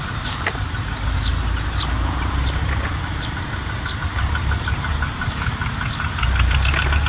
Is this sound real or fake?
real